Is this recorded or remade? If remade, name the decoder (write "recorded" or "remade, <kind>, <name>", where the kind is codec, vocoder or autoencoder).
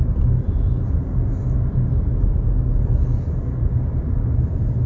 remade, vocoder, BigVGAN v2